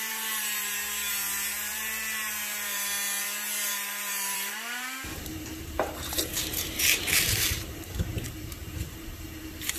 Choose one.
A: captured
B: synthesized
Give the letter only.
B